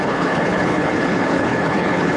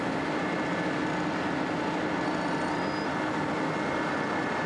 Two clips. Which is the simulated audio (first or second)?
first